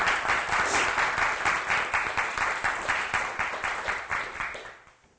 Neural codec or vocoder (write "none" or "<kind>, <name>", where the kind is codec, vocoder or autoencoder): none